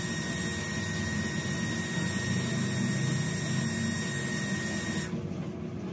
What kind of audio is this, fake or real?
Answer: real